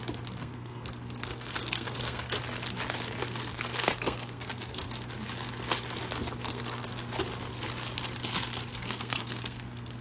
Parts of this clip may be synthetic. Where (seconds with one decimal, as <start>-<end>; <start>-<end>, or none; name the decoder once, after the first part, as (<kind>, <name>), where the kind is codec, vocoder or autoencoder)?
0.4-2.4 (codec, SNAC); 3.2-4.9; 6.4-7.1; 8.7-10.0